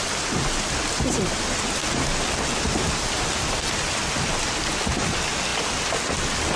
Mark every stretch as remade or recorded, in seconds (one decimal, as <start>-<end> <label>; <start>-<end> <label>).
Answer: 0.0-6.6 recorded